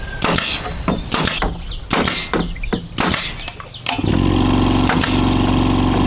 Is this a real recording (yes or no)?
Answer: yes